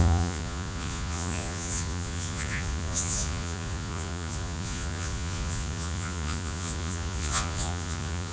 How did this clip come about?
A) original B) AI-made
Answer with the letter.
B